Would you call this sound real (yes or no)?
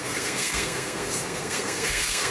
no